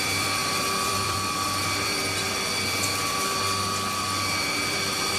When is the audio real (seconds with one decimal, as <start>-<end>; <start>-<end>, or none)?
none